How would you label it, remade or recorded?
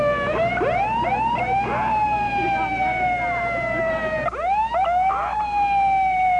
recorded